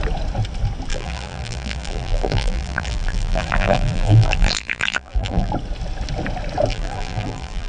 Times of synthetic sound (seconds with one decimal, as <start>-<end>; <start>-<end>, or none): 0.9-5.5; 6.7-7.7